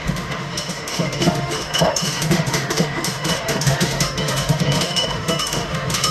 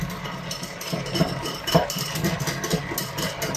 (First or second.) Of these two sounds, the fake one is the first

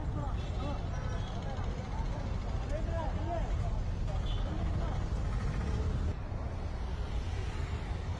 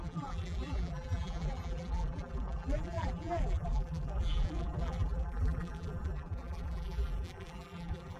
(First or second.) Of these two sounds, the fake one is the second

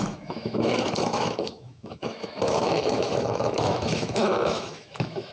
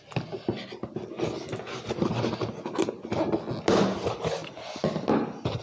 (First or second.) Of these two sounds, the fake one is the first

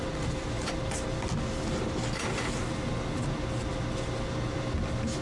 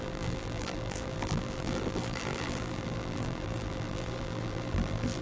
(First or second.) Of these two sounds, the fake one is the second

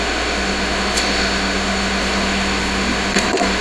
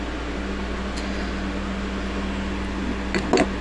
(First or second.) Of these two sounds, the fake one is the first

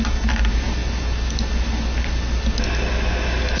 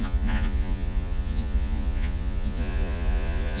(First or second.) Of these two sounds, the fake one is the second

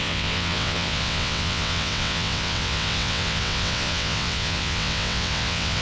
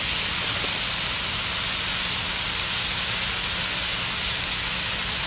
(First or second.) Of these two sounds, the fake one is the first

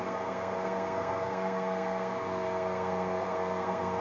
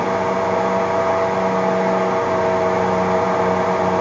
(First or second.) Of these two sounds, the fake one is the first